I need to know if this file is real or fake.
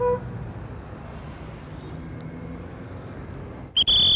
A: real